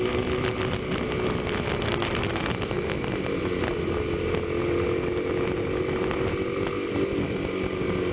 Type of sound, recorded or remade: recorded